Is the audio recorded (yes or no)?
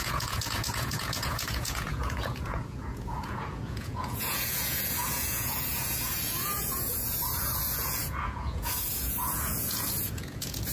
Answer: no